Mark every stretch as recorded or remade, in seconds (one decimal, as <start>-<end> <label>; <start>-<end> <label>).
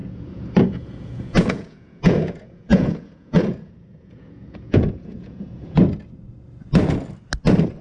0.0-5.8 remade; 5.8-7.8 recorded